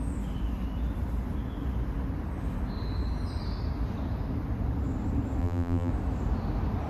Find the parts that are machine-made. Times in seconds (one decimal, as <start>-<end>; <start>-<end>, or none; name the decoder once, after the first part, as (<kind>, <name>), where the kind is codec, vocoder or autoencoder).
5.4-5.9 (vocoder, BigVGAN v2)